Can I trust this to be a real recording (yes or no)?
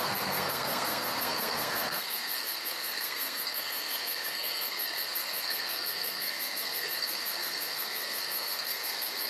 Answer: no